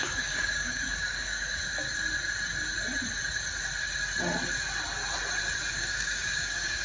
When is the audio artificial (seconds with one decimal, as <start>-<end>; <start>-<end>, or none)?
0.0-1.6; 5.7-6.8